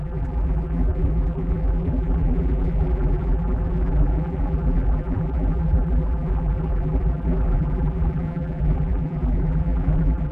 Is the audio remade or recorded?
remade